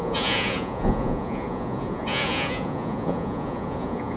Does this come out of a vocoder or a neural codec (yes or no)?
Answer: yes